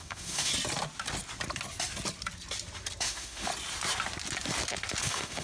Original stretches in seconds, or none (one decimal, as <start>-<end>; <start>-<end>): 0.5-3.0; 3.5-5.0

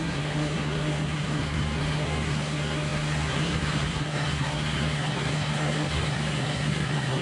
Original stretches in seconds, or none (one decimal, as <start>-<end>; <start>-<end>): none